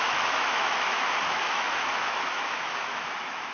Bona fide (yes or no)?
no